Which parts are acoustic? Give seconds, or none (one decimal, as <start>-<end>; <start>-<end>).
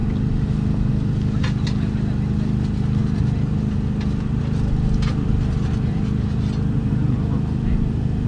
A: 0.0-8.3